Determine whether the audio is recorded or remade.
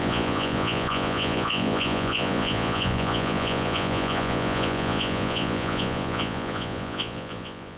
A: remade